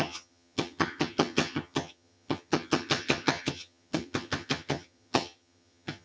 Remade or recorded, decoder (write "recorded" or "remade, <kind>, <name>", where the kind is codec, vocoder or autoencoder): remade, vocoder, HiFi-GAN